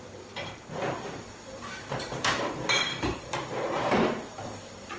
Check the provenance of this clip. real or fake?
fake